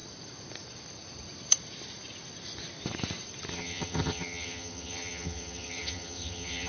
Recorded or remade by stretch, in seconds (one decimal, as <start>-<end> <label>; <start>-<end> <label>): 0.0-3.5 recorded; 3.5-6.7 remade

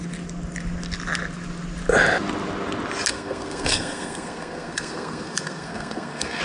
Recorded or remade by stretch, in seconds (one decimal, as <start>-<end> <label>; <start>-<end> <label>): 0.0-3.1 recorded; 3.1-6.4 remade

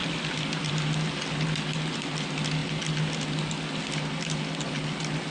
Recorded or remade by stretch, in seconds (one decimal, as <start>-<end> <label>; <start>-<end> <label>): 0.0-0.7 remade; 0.7-5.3 recorded

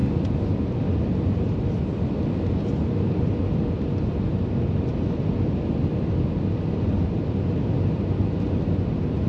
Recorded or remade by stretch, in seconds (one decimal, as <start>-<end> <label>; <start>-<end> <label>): 0.0-9.3 recorded